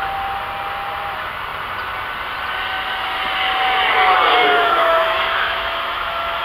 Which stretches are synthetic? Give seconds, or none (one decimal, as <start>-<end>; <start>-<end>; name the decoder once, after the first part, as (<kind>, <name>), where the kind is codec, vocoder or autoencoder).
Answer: 4.4-6.4 (autoencoder, DAC-VAE)